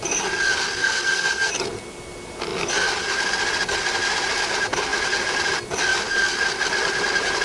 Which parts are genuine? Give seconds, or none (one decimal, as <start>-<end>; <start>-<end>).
0.0-0.8; 1.5-7.4